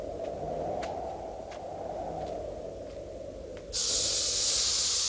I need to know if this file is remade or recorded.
recorded